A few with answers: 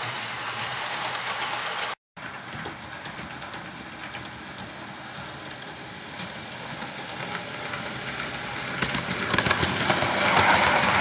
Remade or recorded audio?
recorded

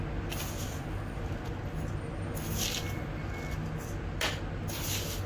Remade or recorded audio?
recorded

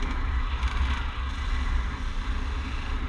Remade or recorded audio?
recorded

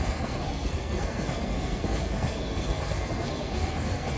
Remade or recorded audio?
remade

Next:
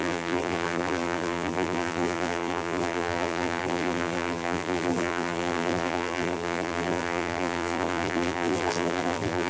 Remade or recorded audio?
remade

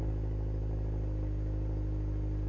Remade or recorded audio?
recorded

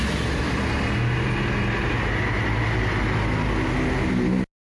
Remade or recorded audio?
recorded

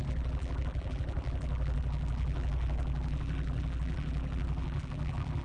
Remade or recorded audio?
remade